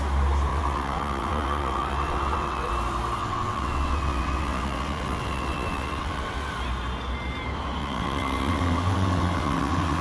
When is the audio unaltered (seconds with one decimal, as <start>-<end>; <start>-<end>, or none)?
0.0-0.5; 2.7-3.2; 6.5-7.8